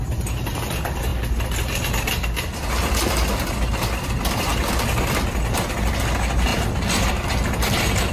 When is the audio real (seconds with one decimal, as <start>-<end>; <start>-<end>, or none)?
0.0-8.1